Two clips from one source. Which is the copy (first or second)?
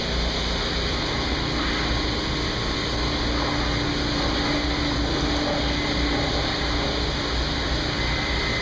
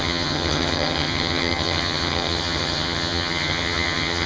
second